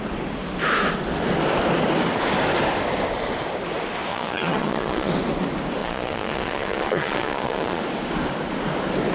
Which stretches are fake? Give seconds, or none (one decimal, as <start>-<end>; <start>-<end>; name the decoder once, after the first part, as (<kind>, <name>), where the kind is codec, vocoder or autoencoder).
4.1-5.1 (vocoder, Vocos); 5.8-7.8